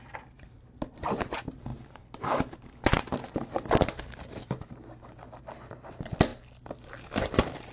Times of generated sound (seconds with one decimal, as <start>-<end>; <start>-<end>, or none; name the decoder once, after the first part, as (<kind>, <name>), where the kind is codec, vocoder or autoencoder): 1.7-5.4 (vocoder, BigVGAN v2)